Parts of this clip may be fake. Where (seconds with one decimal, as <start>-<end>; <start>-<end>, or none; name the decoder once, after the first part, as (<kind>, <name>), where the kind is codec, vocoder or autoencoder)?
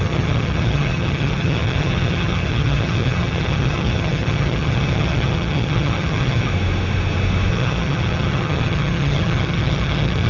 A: 0.0-6.5 (vocoder, HiFi-GAN); 7.5-10.3